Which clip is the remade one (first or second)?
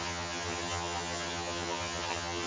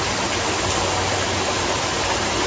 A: first